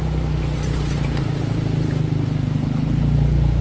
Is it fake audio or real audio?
real